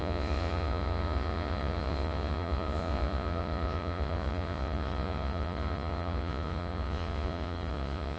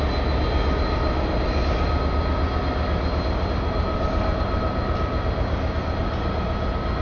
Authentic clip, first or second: second